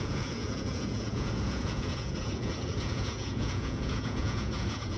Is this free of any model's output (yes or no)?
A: no